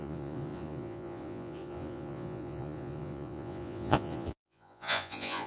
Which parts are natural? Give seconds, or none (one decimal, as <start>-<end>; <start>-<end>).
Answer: none